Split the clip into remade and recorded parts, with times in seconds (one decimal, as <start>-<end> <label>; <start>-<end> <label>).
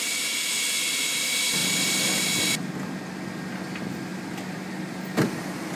0.0-1.6 recorded; 1.6-2.7 remade; 2.7-5.8 recorded